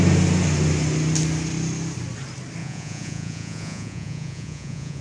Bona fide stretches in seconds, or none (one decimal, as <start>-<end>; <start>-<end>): 0.0-2.6